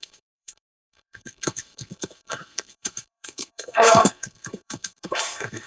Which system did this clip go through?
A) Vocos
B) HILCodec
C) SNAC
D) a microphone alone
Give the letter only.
C